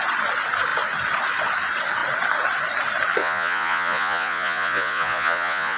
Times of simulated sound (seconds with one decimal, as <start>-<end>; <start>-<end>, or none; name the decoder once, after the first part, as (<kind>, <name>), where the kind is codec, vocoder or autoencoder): 3.2-5.8 (vocoder, Vocos)